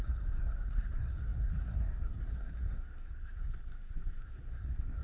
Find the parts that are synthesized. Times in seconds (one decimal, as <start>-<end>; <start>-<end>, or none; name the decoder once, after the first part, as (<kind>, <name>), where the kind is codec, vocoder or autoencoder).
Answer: 0.0-5.0 (codec, SNAC)